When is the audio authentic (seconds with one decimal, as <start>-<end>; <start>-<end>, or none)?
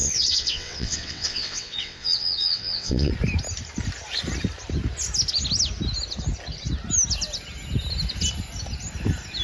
3.1-9.4